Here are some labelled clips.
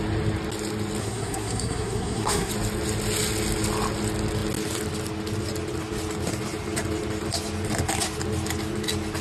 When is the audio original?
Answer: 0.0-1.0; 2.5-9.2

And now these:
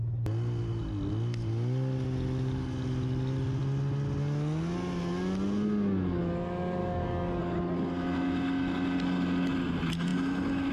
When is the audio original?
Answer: 0.0-6.8; 7.4-10.7

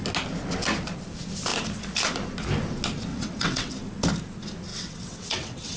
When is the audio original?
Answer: 0.0-3.1; 3.7-4.7

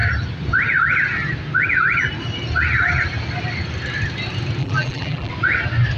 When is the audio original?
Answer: 0.0-4.6; 5.3-6.0

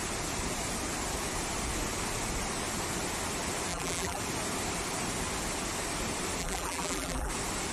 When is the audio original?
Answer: 0.0-3.7; 4.2-6.4; 7.3-7.7

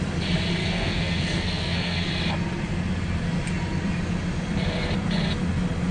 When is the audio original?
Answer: 0.0-0.6; 2.1-5.9

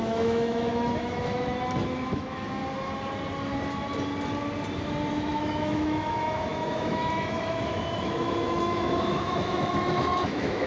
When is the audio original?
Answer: 2.6-5.1